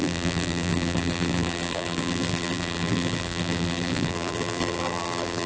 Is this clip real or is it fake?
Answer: fake